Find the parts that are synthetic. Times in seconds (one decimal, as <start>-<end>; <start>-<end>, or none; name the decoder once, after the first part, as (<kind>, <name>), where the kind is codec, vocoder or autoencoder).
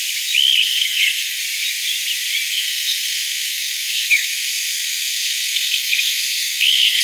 0.6-1.4 (codec, SNAC); 2.5-7.0